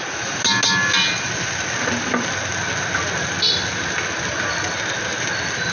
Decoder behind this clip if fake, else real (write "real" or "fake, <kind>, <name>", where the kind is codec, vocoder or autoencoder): real